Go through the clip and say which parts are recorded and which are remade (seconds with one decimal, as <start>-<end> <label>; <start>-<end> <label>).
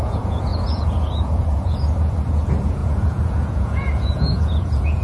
0.0-5.0 remade